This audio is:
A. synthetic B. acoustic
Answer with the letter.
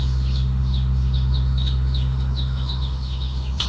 A